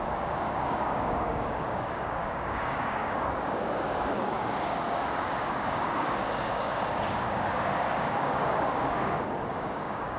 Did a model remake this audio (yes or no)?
yes